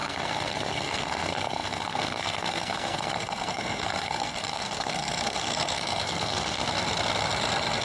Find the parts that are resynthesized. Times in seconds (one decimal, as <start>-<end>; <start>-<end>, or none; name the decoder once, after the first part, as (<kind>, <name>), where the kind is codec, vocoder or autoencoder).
0.0-6.6 (codec, SNAC)

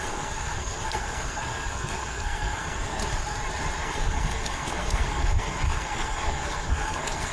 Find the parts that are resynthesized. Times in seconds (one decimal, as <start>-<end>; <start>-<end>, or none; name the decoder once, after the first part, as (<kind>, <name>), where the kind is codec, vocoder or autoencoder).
0.0-3.0 (codec, SNAC); 3.8-7.3

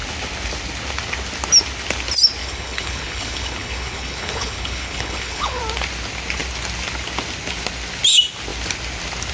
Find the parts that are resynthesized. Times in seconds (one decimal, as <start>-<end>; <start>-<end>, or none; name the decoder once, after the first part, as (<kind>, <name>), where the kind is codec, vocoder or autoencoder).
2.4-5.6 (codec, HILCodec)

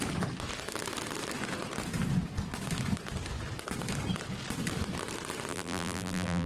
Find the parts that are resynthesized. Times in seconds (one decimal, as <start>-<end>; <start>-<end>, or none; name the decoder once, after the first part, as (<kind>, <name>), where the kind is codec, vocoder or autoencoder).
5.5-6.5 (vocoder, BigVGAN v2)